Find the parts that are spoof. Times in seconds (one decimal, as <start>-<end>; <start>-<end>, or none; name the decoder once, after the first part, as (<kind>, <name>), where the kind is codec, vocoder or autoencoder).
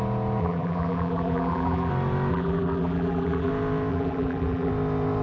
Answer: 0.4-1.9 (vocoder, BigVGAN v2); 2.3-3.5; 3.9-4.7